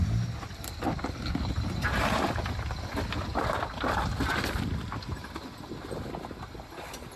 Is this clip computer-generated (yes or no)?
no